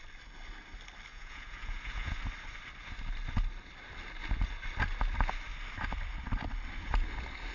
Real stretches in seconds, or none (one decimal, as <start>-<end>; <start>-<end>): 0.0-1.1; 2.2-7.5